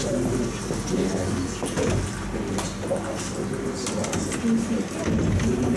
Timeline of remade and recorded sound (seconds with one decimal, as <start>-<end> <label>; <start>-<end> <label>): 0.0-5.8 recorded